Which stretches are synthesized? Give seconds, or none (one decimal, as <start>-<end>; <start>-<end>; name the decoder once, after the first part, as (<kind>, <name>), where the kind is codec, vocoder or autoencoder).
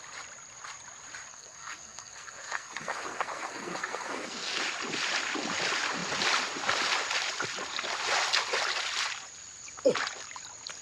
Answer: 1.3-4.6 (codec, SNAC)